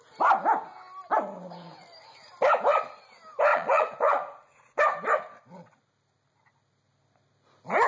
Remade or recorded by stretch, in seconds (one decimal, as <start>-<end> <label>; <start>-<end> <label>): 0.0-3.5 recorded; 3.5-4.8 remade; 4.8-7.9 recorded